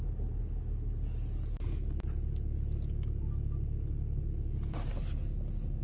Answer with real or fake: real